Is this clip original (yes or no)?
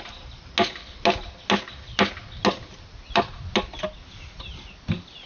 yes